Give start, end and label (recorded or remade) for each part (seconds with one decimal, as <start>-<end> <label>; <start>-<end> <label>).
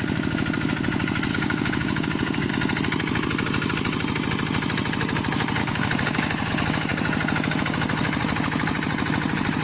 0.0-1.3 recorded; 1.3-2.5 remade; 2.5-5.6 recorded; 5.6-6.5 remade; 6.5-9.6 recorded